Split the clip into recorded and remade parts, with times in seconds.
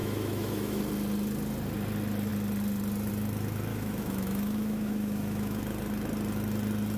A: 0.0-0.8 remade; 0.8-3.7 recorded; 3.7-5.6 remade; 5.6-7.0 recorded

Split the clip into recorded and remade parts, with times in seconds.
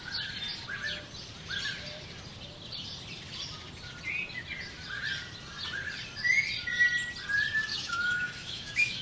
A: 0.0-7.7 recorded; 7.7-9.0 remade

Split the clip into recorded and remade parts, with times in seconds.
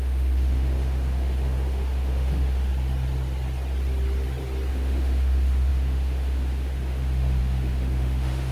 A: 0.0-2.7 remade; 2.7-4.7 recorded; 4.7-8.5 remade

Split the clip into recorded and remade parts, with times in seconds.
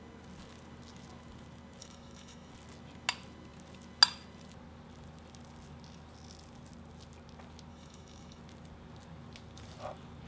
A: 0.0-1.8 recorded; 1.8-2.5 remade; 2.5-7.7 recorded; 7.7-8.4 remade; 8.4-10.3 recorded